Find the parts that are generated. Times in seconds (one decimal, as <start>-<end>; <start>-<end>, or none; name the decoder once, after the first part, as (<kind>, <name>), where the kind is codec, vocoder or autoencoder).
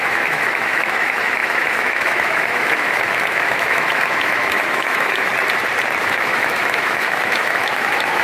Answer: 0.0-5.3 (autoencoder, DAC-VAE); 6.0-8.2